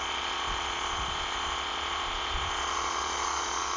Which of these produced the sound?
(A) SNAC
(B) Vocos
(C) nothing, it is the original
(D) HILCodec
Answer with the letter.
B